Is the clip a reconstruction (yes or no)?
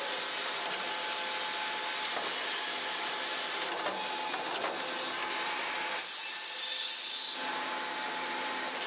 no